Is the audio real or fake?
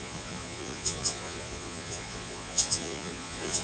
fake